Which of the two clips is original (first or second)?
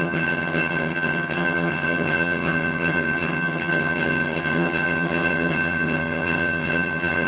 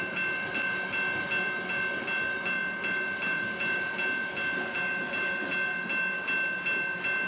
second